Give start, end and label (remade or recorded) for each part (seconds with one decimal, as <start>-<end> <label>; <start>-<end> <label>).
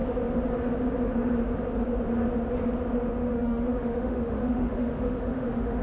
0.0-3.1 recorded; 3.1-5.8 remade